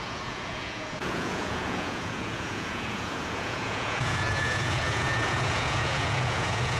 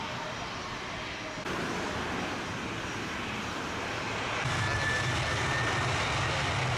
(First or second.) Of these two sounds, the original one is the second